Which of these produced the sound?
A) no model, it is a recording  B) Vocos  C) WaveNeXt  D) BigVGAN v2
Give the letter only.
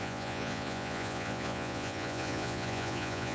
B